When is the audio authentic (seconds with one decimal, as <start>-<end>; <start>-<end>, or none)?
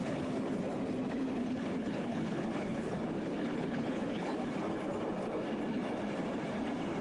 0.6-1.4; 4.5-7.0